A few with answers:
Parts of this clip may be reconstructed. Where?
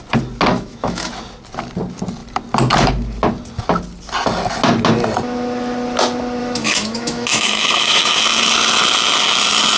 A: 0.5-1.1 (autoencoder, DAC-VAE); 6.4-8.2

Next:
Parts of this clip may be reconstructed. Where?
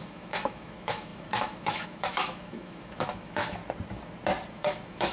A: 0.0-3.6 (autoencoder, DAC-VAE); 4.5-5.1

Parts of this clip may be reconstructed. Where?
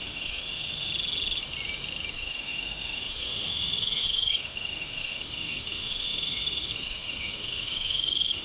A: 0.0-0.9 (autoencoder, DAC-VAE); 2.1-8.4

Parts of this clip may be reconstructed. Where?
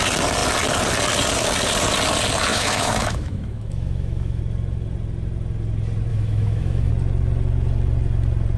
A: 2.5-4.4 (autoencoder, DAC-VAE); 6.1-6.9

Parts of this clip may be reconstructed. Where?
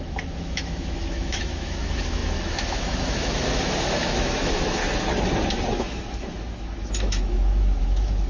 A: 0.0-4.8 (autoencoder, DAC-VAE); 5.7-8.3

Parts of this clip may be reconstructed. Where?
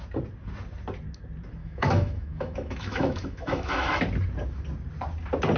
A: 1.6-4.0 (autoencoder, DAC-VAE)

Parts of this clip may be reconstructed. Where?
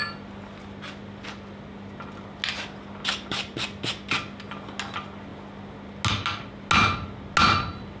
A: none